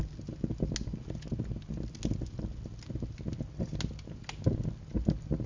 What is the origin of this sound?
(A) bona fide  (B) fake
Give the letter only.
A